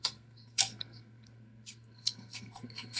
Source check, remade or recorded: remade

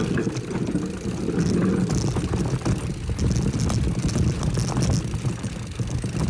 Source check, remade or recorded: recorded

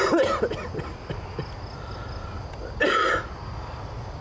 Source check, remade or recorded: recorded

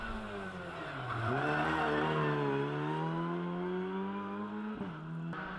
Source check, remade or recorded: recorded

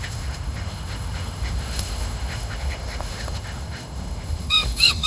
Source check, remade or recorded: remade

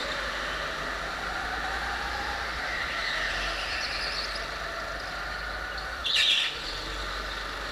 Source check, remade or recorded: recorded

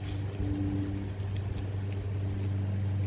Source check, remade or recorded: recorded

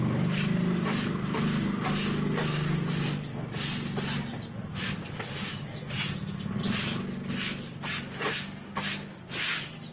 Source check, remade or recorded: recorded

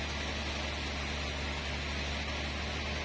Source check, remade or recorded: recorded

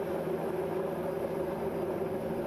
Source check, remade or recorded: recorded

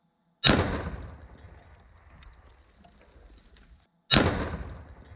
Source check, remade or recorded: recorded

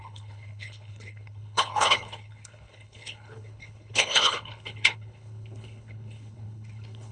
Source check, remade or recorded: remade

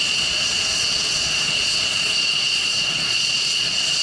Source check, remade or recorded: remade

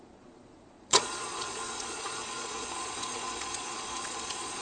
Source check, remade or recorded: remade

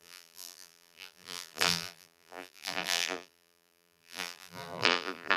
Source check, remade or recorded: remade